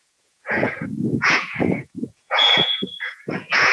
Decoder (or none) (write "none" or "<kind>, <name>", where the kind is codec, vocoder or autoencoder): vocoder, Vocos